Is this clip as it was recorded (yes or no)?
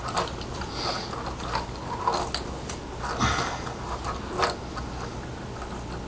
yes